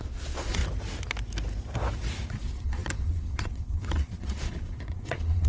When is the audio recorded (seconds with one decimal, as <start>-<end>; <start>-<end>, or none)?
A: 0.6-2.3